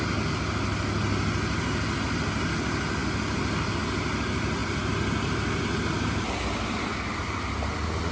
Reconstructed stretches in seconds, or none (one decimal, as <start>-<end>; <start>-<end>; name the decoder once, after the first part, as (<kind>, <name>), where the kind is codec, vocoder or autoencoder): 3.0-3.7 (vocoder, BigVGAN v2)